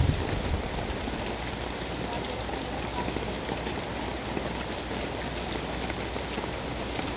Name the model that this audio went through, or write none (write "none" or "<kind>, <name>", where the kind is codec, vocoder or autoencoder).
none